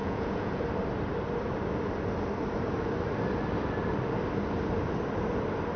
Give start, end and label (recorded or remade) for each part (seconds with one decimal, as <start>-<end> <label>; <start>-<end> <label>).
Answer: 0.0-0.6 remade; 0.6-5.8 recorded